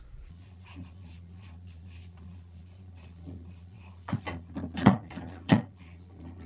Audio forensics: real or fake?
fake